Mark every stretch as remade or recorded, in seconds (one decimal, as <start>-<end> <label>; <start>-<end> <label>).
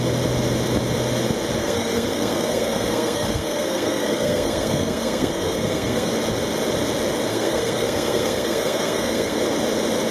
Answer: 0.0-1.6 recorded; 1.6-6.1 remade; 6.1-7.3 recorded; 7.3-9.4 remade; 9.4-10.1 recorded